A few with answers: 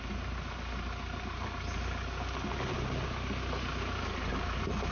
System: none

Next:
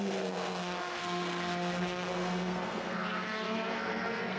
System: codec, SNAC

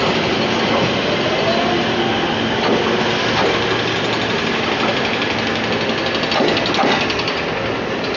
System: none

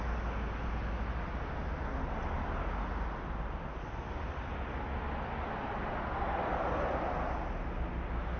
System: none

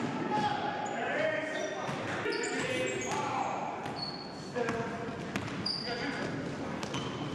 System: none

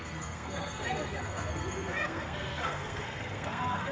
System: codec, SNAC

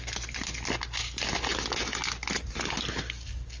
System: none